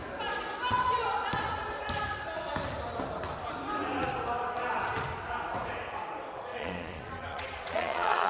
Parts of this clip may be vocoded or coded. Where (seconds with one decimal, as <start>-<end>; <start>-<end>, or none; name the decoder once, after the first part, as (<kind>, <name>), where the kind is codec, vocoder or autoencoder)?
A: 6.5-8.3 (vocoder, Vocos)